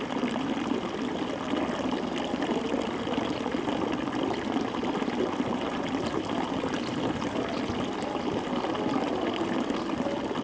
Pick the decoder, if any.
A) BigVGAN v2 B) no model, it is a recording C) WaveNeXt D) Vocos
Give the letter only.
B